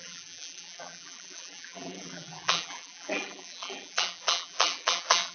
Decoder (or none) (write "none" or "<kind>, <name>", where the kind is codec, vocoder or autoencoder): vocoder, BigVGAN v2